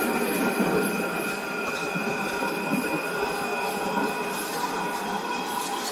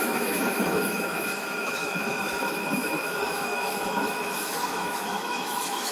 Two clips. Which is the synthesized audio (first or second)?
second